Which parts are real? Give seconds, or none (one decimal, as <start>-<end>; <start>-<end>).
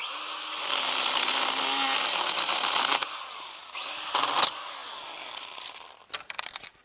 0.0-6.8